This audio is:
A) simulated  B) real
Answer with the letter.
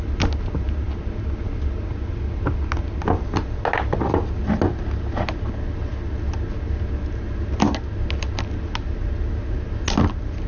B